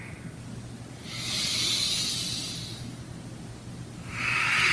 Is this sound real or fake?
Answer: real